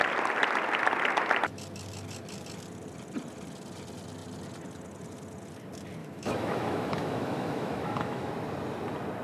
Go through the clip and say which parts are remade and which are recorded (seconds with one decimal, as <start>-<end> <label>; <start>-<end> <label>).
0.0-6.0 recorded; 6.0-8.3 remade; 8.3-9.2 recorded